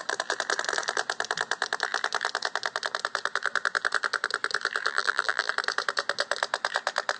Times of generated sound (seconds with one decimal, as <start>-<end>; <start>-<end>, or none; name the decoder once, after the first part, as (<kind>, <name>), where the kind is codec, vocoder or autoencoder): 4.9-5.5 (vocoder, BigVGAN v2)